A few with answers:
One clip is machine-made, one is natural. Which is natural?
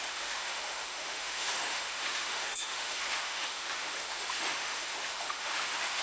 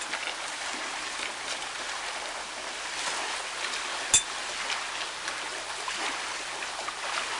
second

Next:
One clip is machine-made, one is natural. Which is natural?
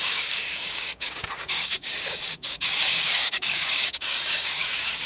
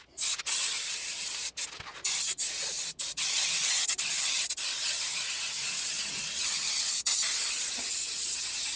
second